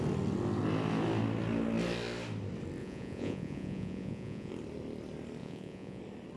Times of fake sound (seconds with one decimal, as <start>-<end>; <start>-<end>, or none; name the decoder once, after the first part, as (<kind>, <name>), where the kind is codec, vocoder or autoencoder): 2.8-4.5 (vocoder, Vocos); 5.4-6.0